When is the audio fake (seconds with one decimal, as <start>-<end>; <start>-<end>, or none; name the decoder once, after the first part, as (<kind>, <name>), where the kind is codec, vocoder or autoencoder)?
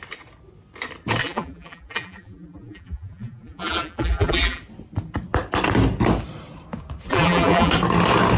1.2-4.6 (vocoder, BigVGAN v2); 7.1-7.7